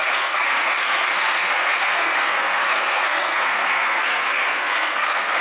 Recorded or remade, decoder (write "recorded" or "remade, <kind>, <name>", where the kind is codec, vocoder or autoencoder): remade, codec, SNAC